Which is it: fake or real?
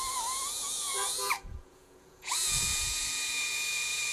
fake